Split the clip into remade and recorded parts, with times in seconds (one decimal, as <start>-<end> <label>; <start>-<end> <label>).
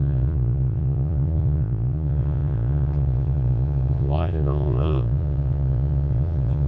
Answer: 0.0-6.7 remade